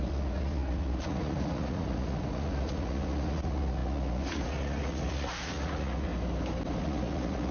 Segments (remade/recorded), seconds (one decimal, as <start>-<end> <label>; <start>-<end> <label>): 0.0-6.1 remade; 6.1-6.8 recorded; 6.8-7.5 remade